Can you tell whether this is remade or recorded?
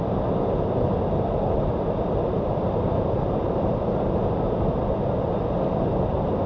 remade